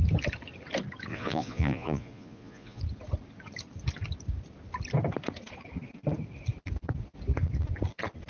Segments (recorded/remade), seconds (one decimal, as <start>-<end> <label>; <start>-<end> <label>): 0.0-1.1 recorded; 1.1-2.8 remade; 2.8-8.3 recorded